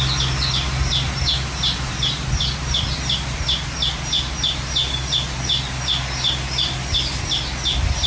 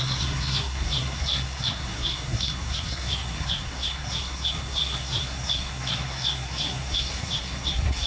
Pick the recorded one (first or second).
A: first